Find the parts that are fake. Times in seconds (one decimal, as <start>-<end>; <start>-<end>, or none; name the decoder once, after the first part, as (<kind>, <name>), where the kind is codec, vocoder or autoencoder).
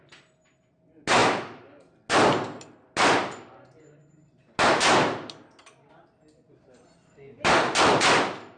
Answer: none